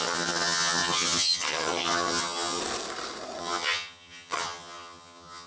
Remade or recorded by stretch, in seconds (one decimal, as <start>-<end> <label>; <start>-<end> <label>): 0.0-2.6 remade; 2.6-3.4 recorded; 3.4-5.5 remade